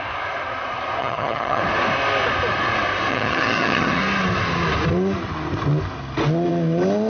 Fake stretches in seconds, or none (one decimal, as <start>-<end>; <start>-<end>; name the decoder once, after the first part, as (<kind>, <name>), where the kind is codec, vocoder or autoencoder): 1.0-1.6 (vocoder, HiFi-GAN); 3.1-4.0